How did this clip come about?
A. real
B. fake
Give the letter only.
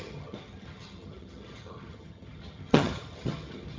B